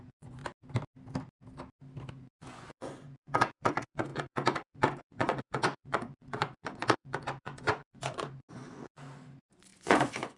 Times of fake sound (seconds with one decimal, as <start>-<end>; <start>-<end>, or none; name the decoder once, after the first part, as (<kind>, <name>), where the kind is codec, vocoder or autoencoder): 0.0-0.4 (vocoder, Vocos); 2.1-10.4